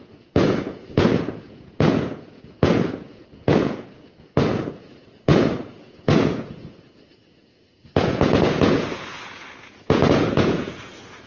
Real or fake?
fake